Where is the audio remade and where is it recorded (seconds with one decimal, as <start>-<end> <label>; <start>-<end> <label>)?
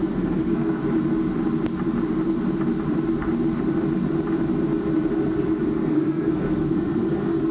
0.0-0.8 remade; 0.8-5.3 recorded; 5.3-7.5 remade